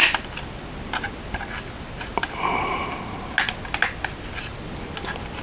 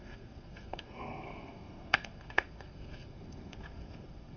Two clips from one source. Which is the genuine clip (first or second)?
first